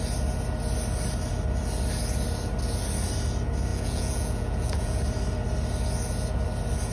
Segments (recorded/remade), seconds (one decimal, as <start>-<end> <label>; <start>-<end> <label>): 0.0-3.7 recorded; 3.7-5.0 remade; 5.0-6.9 recorded